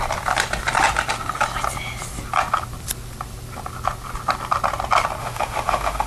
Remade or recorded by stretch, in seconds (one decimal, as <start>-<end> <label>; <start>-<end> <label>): 0.0-5.2 recorded; 5.2-6.1 remade